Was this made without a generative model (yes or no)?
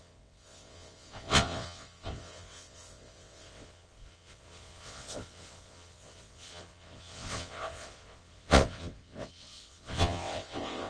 no